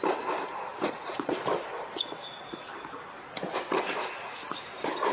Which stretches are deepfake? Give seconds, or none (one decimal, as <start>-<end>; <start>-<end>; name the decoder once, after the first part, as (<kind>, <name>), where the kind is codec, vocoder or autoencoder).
none